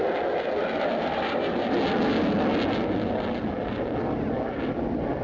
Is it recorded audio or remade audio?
recorded